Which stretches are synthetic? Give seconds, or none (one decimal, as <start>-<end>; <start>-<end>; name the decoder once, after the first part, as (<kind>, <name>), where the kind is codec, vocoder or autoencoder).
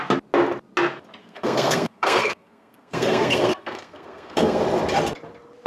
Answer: 1.2-4.6 (codec, SNAC)